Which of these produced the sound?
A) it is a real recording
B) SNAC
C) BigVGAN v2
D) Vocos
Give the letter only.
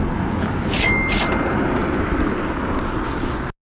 A